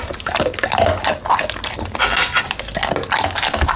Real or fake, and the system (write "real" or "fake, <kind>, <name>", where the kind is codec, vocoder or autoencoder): real